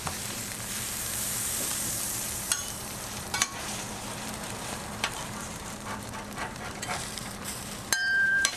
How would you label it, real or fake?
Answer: fake